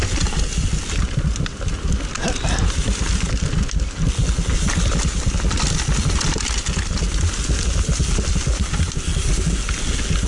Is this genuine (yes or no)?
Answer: yes